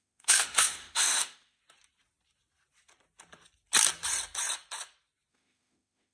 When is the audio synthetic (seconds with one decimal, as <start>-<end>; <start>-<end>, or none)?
0.0-1.6; 5.3-6.1

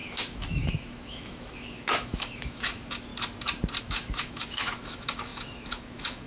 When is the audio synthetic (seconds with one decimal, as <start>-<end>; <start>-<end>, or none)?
0.0-3.1; 3.8-6.3